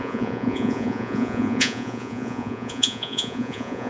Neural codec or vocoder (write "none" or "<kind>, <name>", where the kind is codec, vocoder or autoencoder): vocoder, Vocos